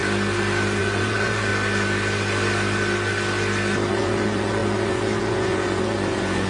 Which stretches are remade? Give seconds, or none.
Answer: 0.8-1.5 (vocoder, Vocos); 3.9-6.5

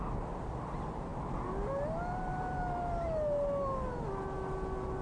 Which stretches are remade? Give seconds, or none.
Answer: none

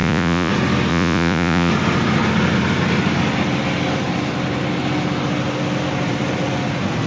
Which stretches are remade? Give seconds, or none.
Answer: 0.0-0.5 (vocoder, Vocos); 0.9-1.7

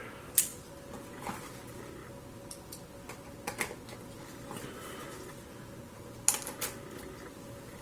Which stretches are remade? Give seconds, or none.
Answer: none

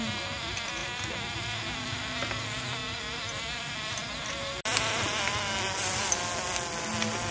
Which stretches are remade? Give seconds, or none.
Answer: none

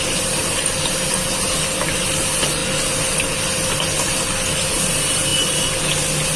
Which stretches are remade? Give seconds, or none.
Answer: none

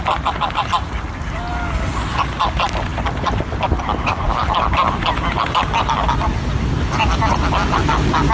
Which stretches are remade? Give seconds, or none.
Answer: none

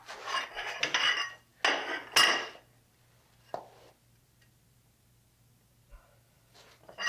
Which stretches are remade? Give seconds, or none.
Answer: none